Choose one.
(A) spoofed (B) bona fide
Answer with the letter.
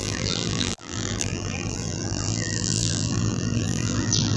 A